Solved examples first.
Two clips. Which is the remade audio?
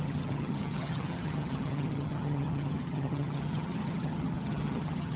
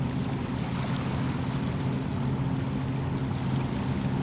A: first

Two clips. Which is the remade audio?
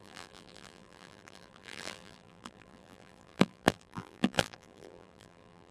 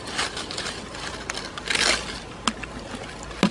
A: first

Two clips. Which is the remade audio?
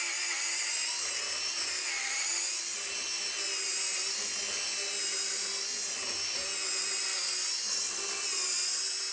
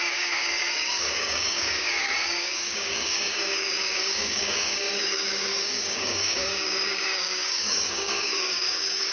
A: second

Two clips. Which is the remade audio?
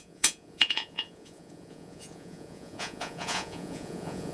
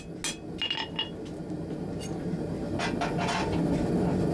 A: first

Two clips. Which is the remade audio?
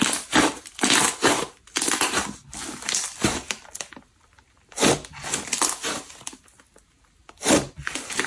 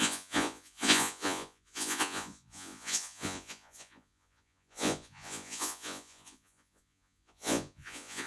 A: second